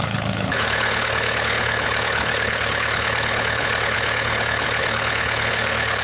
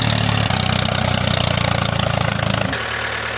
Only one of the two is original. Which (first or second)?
second